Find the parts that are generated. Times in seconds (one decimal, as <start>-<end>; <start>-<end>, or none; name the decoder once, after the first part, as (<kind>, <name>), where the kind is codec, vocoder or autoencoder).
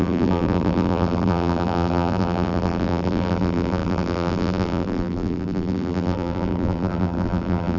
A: 0.0-7.8 (vocoder, BigVGAN v2)